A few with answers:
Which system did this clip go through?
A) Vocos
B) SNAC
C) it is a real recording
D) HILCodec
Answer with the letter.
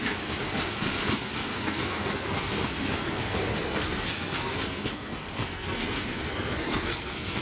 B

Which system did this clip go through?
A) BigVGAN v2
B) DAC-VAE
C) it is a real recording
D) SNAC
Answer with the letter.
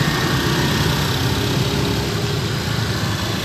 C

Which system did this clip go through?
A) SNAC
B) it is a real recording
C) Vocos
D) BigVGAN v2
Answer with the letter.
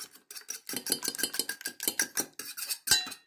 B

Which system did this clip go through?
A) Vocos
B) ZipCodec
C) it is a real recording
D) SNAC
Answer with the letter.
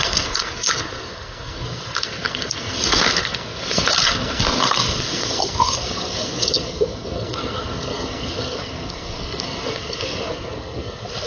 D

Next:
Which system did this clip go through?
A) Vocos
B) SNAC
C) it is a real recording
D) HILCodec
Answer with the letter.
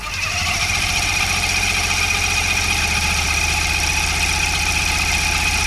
C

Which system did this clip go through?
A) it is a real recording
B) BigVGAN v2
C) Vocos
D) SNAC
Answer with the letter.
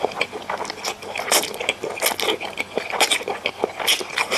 A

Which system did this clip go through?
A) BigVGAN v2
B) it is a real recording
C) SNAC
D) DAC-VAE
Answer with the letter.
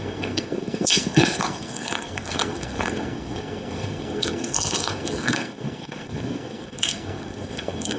C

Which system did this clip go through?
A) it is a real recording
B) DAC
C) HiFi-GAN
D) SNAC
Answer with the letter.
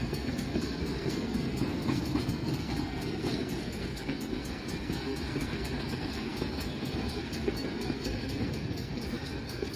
D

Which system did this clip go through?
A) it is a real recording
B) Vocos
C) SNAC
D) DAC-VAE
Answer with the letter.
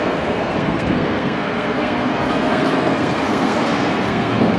C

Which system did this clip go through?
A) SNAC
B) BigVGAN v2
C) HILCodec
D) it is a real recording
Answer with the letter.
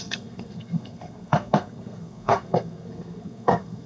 A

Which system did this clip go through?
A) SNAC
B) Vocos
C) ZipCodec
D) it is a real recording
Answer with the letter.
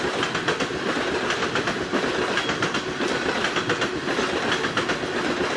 D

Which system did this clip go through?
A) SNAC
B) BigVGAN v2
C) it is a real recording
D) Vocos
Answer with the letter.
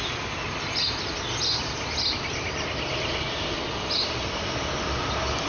C